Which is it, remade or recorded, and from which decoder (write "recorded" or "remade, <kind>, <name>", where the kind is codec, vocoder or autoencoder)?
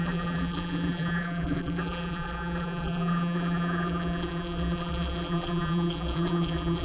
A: remade, vocoder, BigVGAN v2